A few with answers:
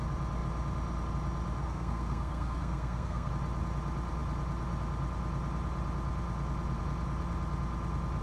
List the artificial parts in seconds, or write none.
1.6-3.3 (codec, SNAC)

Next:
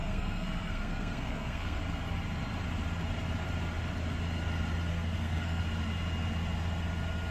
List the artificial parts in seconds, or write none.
0.0-1.8 (codec, SNAC); 4.9-5.6

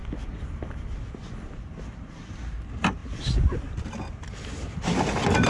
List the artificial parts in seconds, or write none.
2.5-3.0 (vocoder, BigVGAN v2)

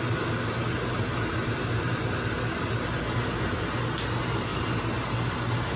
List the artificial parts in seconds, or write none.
none

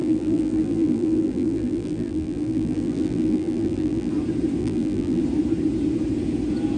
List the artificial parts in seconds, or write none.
0.0-4.1 (vocoder, BigVGAN v2); 4.6-5.2

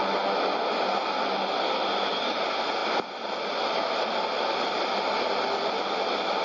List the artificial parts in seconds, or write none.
none